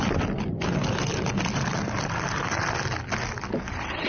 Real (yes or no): yes